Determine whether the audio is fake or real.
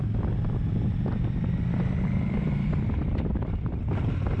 fake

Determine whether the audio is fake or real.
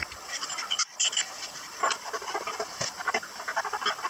fake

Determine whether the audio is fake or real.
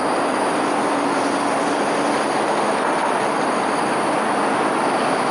real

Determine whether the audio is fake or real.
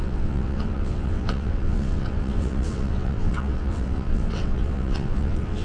fake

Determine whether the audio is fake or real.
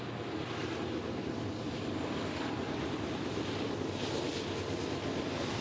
real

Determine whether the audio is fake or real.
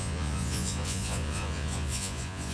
fake